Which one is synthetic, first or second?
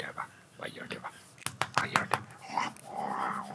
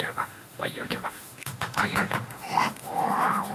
second